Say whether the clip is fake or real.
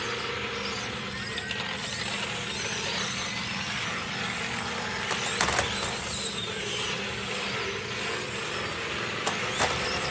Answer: real